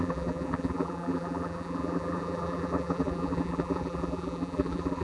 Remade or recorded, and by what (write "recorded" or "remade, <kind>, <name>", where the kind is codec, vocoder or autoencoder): remade, vocoder, BigVGAN v2